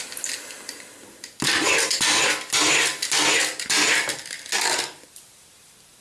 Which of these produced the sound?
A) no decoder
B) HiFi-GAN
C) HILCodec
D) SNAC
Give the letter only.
A